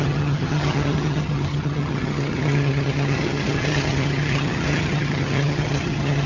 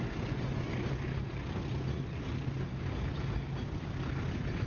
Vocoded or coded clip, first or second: first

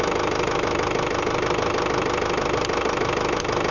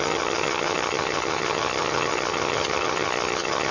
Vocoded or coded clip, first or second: second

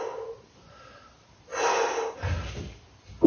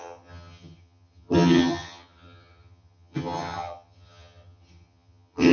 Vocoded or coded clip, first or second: second